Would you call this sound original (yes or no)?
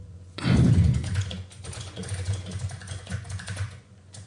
no